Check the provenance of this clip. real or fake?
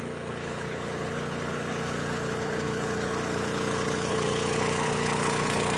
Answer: fake